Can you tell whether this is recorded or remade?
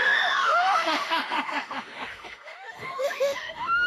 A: remade